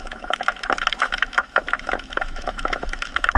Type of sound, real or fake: fake